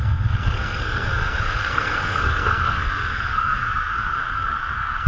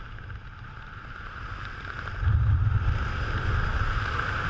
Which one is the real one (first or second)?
second